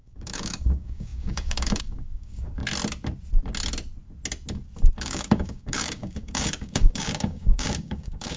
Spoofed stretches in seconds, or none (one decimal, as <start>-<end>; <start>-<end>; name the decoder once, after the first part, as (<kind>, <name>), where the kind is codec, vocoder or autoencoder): 0.0-2.6 (codec, DAC); 5.0-8.4